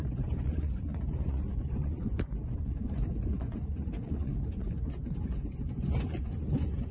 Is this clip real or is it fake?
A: fake